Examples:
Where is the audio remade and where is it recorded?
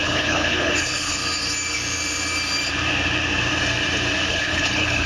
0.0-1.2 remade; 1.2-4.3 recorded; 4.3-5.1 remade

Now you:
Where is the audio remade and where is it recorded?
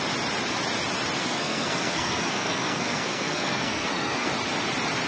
0.0-1.2 recorded; 1.2-4.3 remade; 4.3-5.1 recorded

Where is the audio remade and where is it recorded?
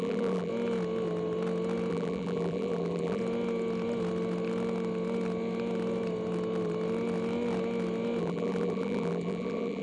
0.0-0.5 remade; 0.5-1.9 recorded; 1.9-3.2 remade; 3.2-8.2 recorded; 8.2-9.8 remade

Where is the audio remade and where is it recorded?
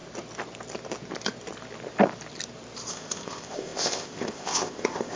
0.0-2.9 recorded; 2.9-5.2 remade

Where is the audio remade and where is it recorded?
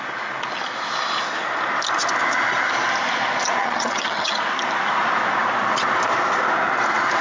0.0-3.6 recorded; 3.6-4.4 remade; 4.4-7.2 recorded